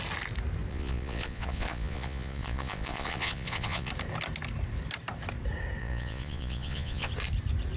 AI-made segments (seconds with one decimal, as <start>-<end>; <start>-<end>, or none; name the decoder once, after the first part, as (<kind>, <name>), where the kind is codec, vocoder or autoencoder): 0.7-3.9 (vocoder, Vocos); 5.8-7.1